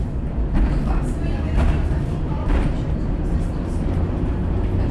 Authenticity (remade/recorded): remade